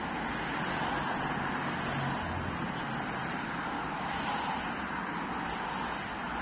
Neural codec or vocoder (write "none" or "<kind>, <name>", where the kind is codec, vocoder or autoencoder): none